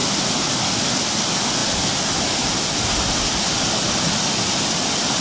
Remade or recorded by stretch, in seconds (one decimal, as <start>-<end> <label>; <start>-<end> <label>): 0.0-5.2 recorded

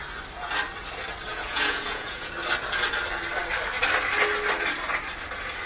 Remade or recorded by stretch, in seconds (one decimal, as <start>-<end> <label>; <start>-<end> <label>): 0.0-1.3 recorded; 1.3-2.3 remade; 2.3-5.7 recorded